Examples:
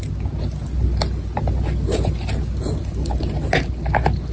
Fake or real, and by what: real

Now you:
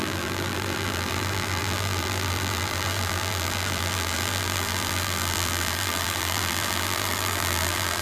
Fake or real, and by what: fake, vocoder, BigVGAN v2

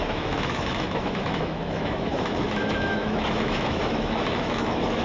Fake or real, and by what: fake, autoencoder, DAC-VAE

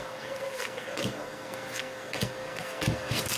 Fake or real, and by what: fake, codec, SNAC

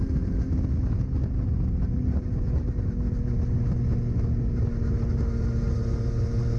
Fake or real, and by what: real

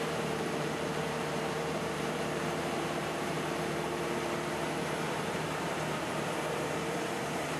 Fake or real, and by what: fake, vocoder, BigVGAN v2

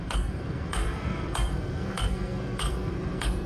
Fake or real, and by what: fake, codec, SNAC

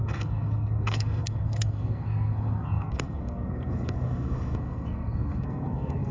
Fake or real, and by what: fake, codec, SNAC